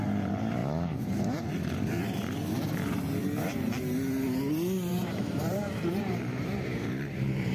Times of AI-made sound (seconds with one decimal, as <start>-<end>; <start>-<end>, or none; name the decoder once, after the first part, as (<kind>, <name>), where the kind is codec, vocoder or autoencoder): 0.6-1.4 (vocoder, BigVGAN v2); 4.9-7.5